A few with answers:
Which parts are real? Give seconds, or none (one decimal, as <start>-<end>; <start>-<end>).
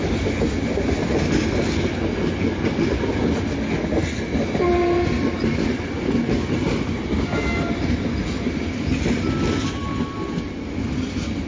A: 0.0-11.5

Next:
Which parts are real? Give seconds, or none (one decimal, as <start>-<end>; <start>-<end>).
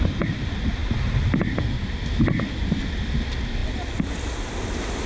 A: 0.0-5.1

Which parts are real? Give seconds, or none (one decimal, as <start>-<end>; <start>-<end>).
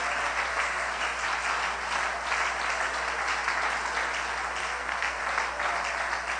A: 0.0-0.5; 1.0-4.6; 5.2-6.4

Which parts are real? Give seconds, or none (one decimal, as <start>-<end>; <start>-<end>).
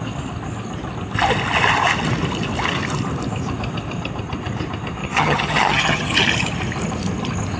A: 0.0-5.0; 6.2-7.6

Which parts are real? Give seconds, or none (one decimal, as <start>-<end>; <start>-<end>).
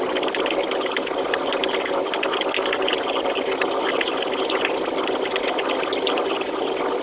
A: 0.0-7.0